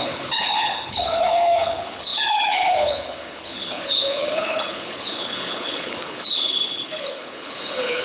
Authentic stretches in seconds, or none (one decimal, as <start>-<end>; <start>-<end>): none